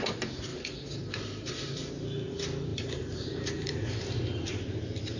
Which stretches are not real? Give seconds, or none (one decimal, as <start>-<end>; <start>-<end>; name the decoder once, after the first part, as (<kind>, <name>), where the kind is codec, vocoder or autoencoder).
0.5-1.9 (vocoder, BigVGAN v2); 2.7-4.5